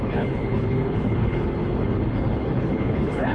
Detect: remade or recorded remade